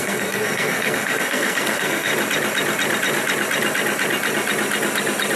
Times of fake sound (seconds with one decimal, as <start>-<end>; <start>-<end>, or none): 0.0-2.1